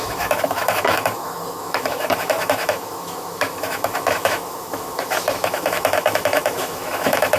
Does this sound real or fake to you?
fake